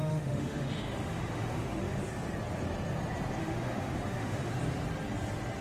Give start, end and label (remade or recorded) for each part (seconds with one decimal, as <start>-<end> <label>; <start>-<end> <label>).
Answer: 0.0-2.0 remade; 2.0-3.4 recorded; 3.4-4.5 remade; 4.5-5.6 recorded